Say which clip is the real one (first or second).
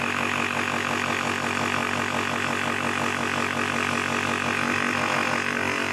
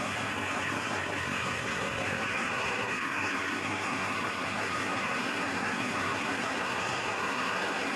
first